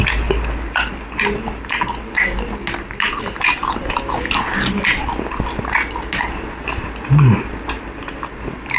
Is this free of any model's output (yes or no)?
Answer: yes